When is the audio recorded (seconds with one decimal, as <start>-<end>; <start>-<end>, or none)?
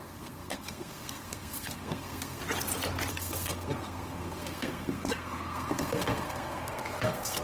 2.4-3.1